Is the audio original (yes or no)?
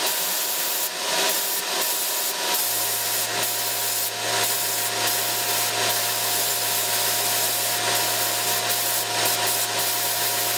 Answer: yes